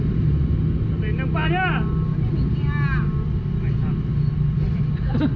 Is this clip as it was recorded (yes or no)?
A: yes